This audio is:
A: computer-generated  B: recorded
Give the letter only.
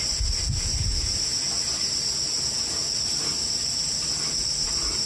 B